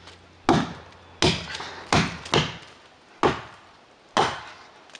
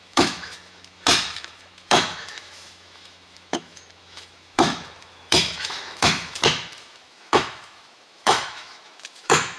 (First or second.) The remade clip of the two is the second